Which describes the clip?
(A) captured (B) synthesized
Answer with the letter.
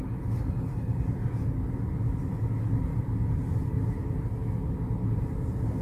A